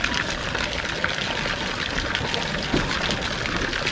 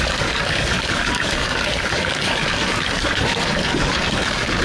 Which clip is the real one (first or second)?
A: first